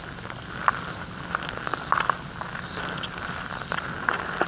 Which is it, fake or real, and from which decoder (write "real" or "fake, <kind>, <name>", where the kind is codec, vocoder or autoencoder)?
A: real